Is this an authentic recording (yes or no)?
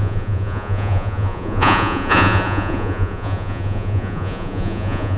no